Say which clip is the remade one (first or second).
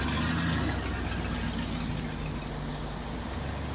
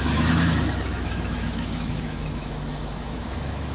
second